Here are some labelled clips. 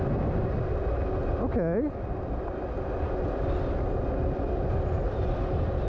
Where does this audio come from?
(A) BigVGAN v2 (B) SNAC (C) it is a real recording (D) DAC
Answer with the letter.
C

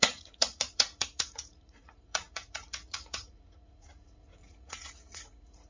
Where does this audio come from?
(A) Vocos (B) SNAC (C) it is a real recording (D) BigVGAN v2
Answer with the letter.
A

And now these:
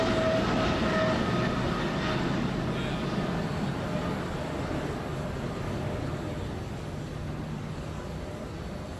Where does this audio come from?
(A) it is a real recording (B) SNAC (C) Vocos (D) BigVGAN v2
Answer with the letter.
A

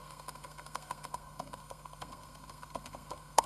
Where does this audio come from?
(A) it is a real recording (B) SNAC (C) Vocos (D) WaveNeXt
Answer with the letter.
B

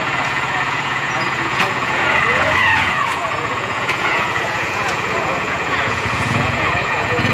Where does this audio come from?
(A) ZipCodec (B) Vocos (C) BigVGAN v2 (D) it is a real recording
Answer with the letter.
B